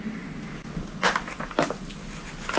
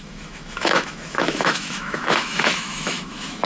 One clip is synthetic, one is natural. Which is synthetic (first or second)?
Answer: second